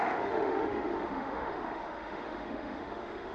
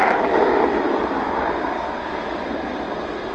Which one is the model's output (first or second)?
first